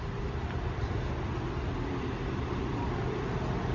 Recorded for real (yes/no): yes